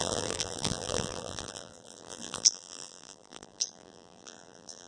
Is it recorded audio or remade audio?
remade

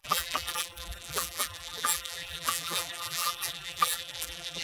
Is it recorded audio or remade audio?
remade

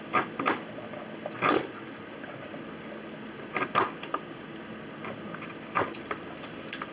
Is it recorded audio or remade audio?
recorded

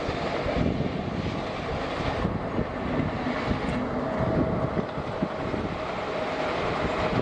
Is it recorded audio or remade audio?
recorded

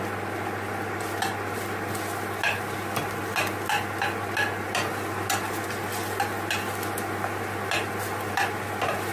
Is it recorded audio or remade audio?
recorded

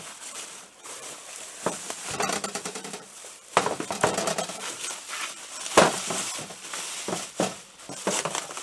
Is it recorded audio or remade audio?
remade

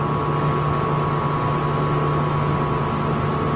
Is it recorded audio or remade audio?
recorded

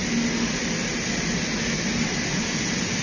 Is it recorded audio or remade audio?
recorded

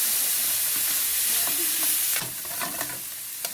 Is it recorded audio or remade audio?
remade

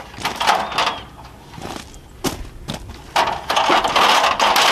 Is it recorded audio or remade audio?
recorded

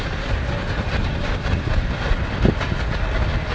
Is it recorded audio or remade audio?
recorded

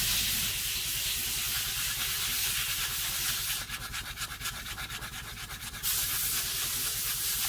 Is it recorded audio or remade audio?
recorded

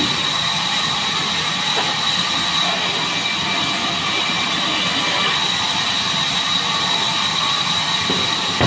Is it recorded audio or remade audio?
recorded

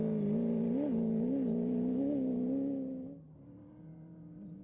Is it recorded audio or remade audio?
recorded